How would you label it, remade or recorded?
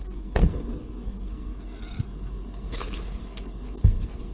remade